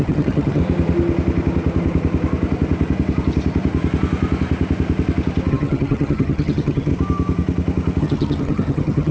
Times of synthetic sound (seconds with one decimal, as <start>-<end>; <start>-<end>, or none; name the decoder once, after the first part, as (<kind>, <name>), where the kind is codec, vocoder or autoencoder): 0.0-0.6 (vocoder, HiFi-GAN); 5.5-6.9; 8.0-9.1